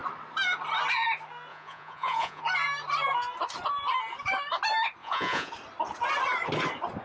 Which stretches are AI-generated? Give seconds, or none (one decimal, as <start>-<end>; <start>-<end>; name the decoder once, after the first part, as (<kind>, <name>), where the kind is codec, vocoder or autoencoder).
1.5-2.4 (vocoder, Vocos); 5.0-5.5